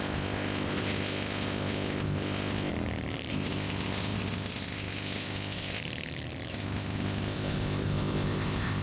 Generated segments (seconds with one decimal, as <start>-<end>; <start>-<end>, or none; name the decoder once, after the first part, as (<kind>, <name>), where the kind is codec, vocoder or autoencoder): 0.0-2.7 (codec, ZipCodec); 3.3-5.8; 6.5-8.8